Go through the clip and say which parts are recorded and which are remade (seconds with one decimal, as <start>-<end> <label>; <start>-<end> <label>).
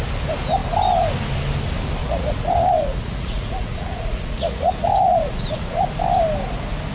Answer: 0.0-2.0 recorded; 2.0-5.9 remade; 5.9-6.9 recorded